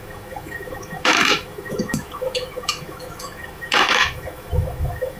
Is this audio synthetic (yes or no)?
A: yes